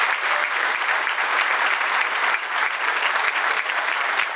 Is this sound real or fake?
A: fake